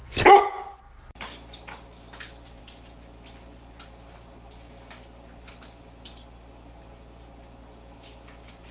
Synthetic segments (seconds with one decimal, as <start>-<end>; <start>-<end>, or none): none